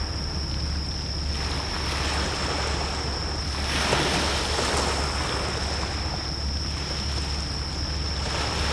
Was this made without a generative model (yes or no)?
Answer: yes